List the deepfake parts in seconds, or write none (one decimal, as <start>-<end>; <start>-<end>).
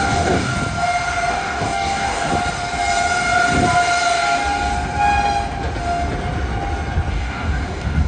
0.0-0.5; 1.3-2.3; 7.1-8.1